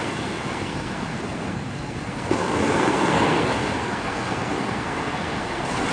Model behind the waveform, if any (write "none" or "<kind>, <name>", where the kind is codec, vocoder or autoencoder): codec, SNAC